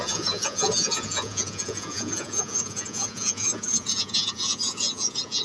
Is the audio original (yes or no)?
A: no